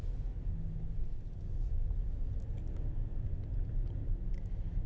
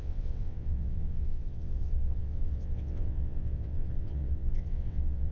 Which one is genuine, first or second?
first